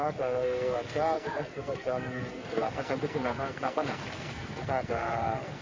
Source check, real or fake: fake